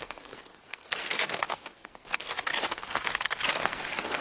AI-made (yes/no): yes